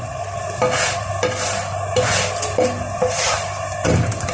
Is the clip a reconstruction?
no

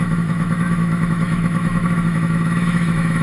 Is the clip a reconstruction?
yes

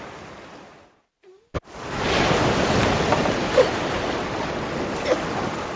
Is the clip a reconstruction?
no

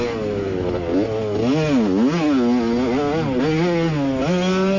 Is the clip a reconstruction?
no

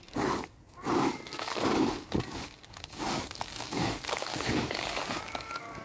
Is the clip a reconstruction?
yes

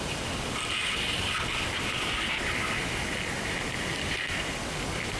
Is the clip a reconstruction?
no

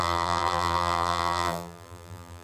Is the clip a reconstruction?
yes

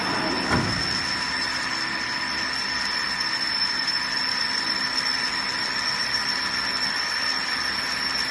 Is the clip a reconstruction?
no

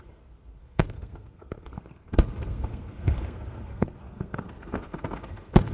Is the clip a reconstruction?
yes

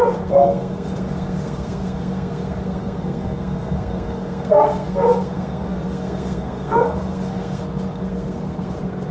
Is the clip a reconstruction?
yes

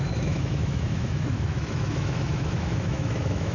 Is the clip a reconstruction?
yes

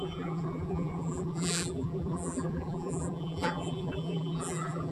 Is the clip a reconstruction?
yes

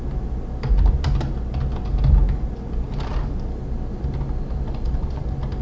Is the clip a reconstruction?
no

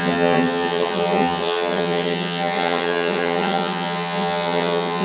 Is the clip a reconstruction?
yes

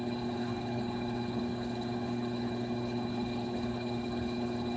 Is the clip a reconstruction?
yes